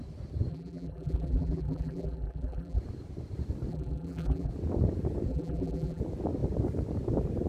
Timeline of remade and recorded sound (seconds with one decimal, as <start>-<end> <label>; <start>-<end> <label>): 0.0-0.5 recorded; 0.5-2.8 remade; 2.8-3.7 recorded; 3.7-4.5 remade; 4.5-5.3 recorded; 5.3-6.0 remade; 6.0-7.5 recorded